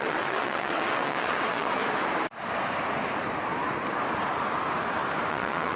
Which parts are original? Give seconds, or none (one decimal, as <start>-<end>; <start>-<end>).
1.8-5.3